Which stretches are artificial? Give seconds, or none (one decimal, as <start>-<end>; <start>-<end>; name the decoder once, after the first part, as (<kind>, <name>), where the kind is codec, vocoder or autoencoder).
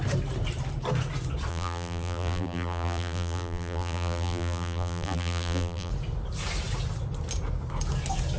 1.5-5.9 (vocoder, BigVGAN v2)